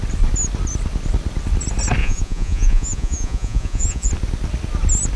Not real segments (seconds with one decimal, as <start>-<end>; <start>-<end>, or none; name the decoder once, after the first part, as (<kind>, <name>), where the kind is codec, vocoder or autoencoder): 2.0-4.1 (vocoder, Vocos)